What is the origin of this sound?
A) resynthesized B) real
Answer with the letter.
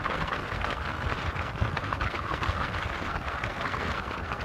A